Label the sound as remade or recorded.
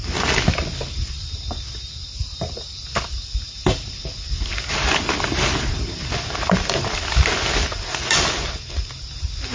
recorded